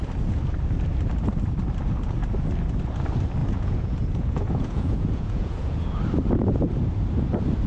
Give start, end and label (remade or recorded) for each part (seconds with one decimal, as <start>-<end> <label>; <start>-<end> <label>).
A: 0.0-3.4 recorded; 3.4-6.0 remade; 6.0-7.7 recorded